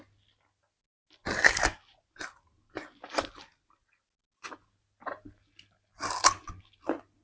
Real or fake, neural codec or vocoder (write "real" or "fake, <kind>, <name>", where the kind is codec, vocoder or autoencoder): real